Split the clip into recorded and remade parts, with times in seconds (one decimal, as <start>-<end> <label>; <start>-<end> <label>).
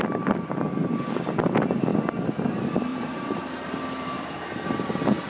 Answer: 0.0-0.7 recorded; 0.7-1.3 remade; 1.3-2.9 recorded; 2.9-5.3 remade